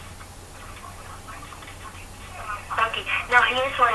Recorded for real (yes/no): yes